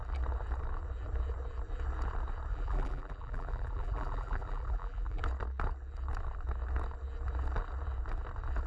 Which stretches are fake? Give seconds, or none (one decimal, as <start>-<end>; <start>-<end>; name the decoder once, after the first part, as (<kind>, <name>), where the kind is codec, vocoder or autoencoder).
2.5-5.2 (vocoder, BigVGAN v2)